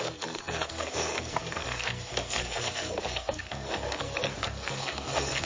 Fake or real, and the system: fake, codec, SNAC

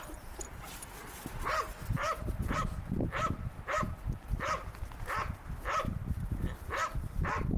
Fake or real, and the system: real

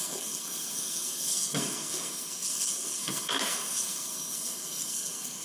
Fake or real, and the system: fake, codec, SNAC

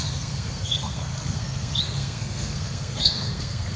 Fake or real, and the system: fake, codec, SNAC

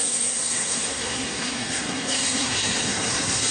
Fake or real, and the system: fake, codec, SNAC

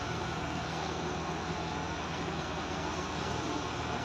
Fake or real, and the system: fake, codec, SNAC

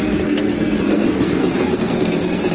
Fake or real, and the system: fake, codec, SNAC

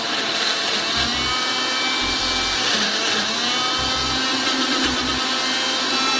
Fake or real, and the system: real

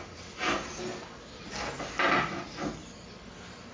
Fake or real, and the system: real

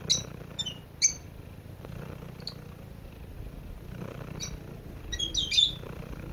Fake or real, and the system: real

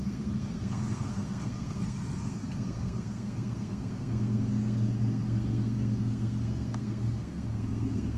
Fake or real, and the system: fake, codec, SNAC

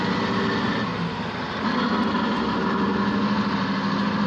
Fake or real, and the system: real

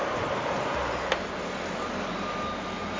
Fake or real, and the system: real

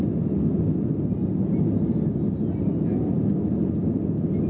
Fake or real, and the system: real